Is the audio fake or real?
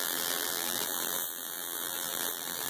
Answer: fake